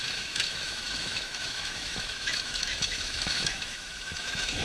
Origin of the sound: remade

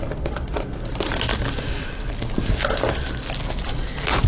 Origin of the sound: recorded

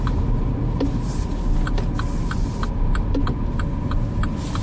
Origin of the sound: recorded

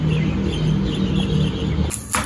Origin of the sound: recorded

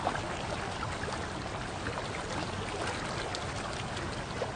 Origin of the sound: recorded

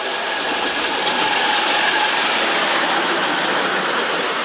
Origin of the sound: recorded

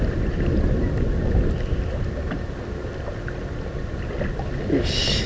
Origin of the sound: recorded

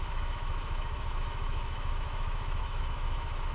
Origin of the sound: remade